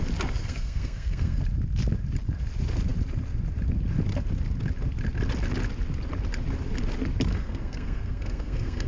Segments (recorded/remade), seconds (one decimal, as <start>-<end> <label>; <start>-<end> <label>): 0.0-0.4 recorded; 0.4-1.4 remade; 1.4-7.3 recorded; 7.3-8.9 remade